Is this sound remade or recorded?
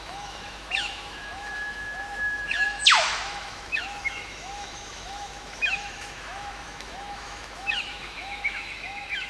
remade